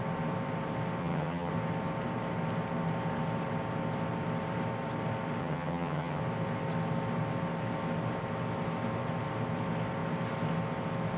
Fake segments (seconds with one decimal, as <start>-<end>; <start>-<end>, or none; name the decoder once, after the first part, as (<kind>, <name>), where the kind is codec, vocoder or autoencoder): 1.0-1.5 (vocoder, HiFi-GAN); 5.4-6.2